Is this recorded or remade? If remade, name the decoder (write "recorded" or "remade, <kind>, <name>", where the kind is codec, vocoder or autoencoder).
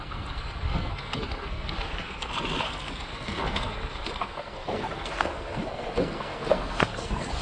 remade, codec, SNAC